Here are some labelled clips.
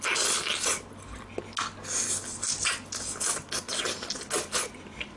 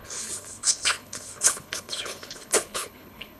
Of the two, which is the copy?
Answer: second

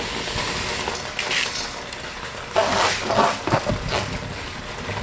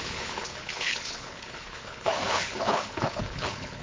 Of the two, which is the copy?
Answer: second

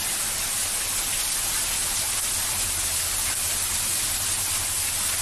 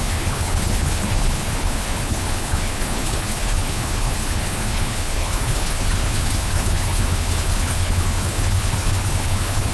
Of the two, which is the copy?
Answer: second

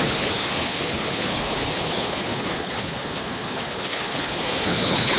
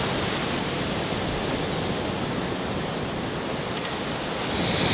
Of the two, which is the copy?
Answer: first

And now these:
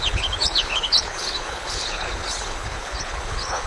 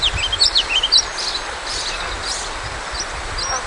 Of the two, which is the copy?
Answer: first